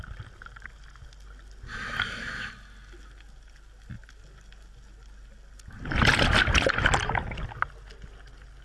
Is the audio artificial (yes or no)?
no